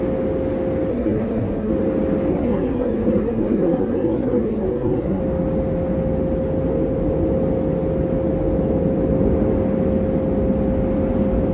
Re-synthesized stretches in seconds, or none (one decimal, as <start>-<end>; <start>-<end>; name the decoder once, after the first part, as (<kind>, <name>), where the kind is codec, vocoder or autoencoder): 0.9-1.7 (codec, SNAC); 2.3-5.2